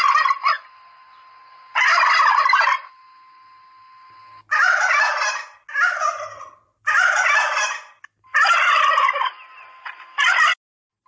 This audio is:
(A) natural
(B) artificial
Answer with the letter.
A